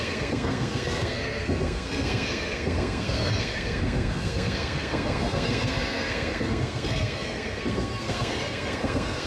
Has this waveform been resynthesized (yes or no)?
yes